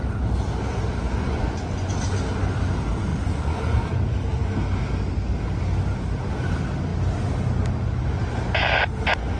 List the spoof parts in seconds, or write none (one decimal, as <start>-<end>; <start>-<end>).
1.2-1.9; 3.1-4.0